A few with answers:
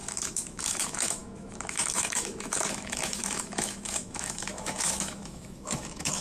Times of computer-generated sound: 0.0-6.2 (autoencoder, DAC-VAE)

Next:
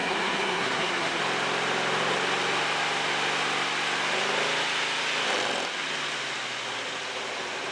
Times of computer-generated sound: 0.0-1.2 (codec, SNAC)

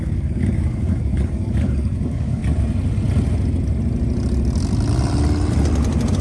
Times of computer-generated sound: 0.0-2.4 (codec, DAC)

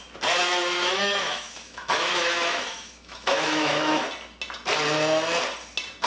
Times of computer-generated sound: 0.4-4.0 (autoencoder, DAC-VAE)

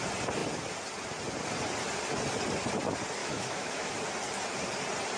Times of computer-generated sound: 3.2-3.9 (autoencoder, DAC-VAE)